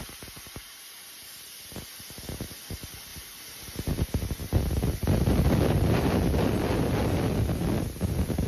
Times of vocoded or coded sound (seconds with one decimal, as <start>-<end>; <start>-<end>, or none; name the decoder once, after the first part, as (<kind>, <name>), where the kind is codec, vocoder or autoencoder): none

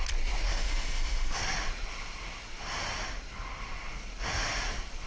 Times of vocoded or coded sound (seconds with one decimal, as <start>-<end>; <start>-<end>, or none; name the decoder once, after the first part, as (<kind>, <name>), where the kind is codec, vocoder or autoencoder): 0.5-1.4 (autoencoder, DAC-VAE)

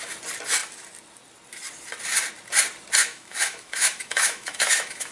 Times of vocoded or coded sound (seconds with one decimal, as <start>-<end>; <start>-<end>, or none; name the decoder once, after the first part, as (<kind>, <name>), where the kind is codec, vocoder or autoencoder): 3.0-5.1 (autoencoder, DAC-VAE)

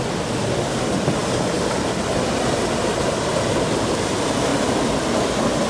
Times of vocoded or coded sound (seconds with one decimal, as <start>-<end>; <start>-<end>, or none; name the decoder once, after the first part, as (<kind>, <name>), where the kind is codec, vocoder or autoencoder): none